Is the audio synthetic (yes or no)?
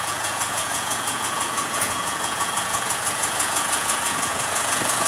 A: yes